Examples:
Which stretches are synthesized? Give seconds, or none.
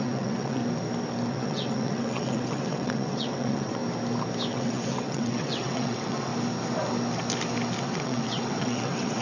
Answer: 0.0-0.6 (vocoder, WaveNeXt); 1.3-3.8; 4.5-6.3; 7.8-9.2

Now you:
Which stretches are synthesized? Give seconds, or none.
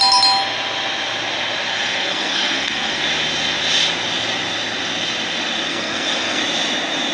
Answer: 1.7-3.0 (codec, SNAC); 5.7-6.4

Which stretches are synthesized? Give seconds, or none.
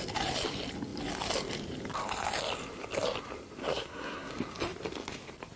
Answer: 3.6-4.3 (codec, SNAC)